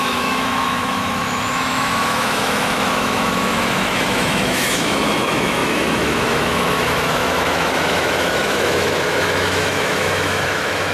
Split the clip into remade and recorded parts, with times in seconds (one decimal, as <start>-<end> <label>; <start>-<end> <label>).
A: 0.0-10.9 remade